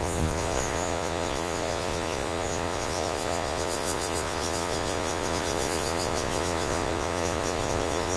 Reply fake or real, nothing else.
fake